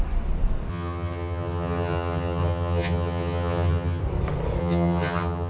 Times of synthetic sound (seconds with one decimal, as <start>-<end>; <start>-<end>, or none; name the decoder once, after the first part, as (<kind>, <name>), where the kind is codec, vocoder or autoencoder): 0.7-4.0 (vocoder, HiFi-GAN); 4.6-5.5